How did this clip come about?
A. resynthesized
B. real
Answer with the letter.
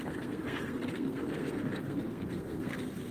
A